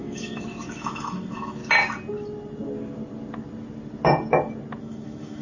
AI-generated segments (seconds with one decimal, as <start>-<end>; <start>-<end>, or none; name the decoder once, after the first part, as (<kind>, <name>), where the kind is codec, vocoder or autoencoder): 0.0-1.6 (autoencoder, DAC-VAE); 4.8-5.4